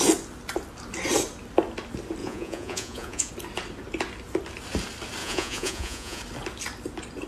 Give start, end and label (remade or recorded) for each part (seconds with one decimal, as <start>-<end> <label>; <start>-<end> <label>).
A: 0.0-2.2 recorded; 2.2-3.3 remade; 3.3-5.2 recorded; 5.2-6.2 remade; 6.2-7.3 recorded